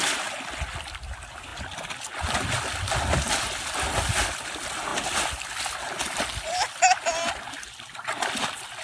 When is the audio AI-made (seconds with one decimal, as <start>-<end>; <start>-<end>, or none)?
none